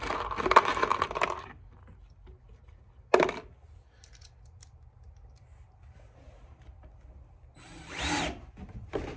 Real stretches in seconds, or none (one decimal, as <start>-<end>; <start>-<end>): 0.0-0.9; 1.5-9.2